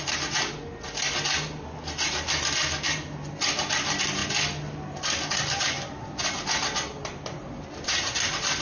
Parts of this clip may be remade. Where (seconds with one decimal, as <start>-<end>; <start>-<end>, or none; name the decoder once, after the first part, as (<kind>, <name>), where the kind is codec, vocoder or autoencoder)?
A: none